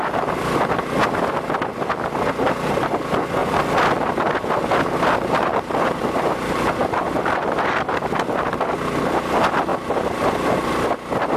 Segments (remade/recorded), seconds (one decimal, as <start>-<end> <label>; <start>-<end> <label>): 0.0-11.4 recorded